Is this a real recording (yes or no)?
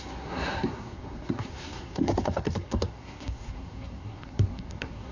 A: no